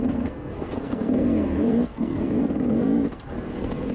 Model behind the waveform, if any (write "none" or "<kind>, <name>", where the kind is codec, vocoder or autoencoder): codec, SNAC